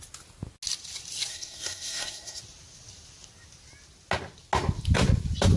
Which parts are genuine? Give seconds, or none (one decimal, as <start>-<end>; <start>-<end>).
0.0-1.3; 2.4-5.6